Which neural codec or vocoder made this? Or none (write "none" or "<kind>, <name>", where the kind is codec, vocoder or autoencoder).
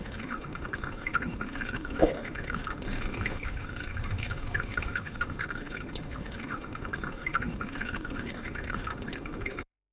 autoencoder, DAC-VAE